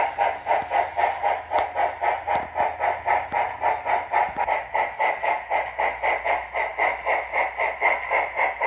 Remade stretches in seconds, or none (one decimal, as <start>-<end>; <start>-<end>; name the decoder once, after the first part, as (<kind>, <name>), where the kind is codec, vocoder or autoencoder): none